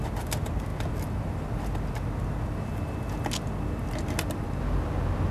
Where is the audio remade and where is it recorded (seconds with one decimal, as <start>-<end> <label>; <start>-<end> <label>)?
0.0-5.3 recorded